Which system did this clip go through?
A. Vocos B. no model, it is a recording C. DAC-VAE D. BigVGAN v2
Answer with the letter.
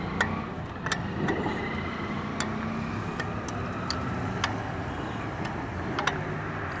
B